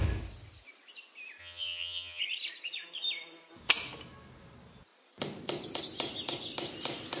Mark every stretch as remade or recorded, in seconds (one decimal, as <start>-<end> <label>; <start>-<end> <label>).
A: 0.0-1.4 recorded; 1.4-2.2 remade; 2.2-7.2 recorded